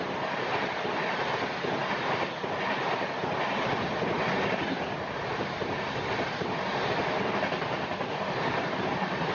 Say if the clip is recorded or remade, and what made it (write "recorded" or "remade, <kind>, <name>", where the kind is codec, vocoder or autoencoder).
remade, vocoder, BigVGAN v2